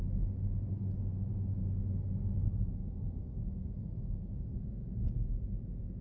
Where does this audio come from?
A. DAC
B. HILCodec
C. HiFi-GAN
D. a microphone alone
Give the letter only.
D